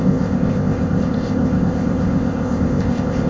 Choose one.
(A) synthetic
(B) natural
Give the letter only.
A